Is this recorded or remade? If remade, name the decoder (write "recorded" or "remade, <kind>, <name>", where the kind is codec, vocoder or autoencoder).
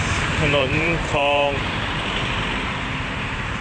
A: remade, vocoder, BigVGAN v2